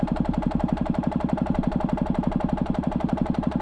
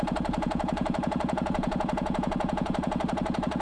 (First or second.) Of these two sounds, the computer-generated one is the second